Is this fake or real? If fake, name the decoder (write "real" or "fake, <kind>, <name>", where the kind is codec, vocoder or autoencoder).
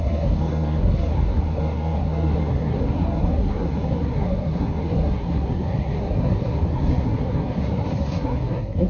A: fake, codec, SNAC